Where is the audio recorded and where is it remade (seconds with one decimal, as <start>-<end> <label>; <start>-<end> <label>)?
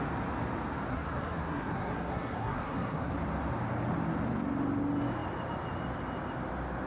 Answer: 0.0-0.9 recorded; 0.9-3.1 remade; 3.1-6.9 recorded